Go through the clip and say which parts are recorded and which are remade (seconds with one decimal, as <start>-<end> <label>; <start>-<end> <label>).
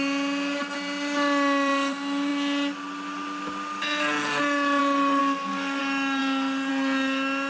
0.0-5.2 recorded; 5.2-5.8 remade; 5.8-7.5 recorded